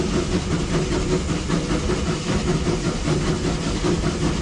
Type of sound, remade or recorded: recorded